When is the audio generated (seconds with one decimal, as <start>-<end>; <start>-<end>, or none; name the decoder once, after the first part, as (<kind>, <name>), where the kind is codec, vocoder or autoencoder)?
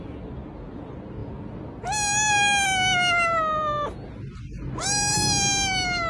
none